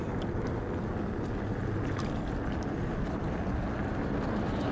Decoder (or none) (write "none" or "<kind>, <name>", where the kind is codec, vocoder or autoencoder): none